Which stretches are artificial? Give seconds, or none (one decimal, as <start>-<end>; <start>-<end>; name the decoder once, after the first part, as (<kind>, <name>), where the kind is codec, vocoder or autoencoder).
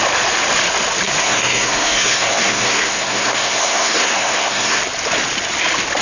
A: 1.2-4.8 (codec, SNAC)